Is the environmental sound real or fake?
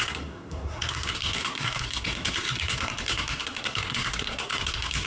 fake